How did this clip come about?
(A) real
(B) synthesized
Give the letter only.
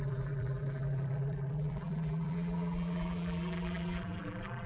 B